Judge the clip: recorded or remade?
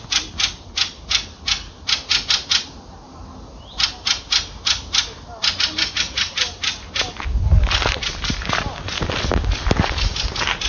recorded